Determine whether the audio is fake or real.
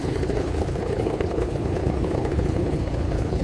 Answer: fake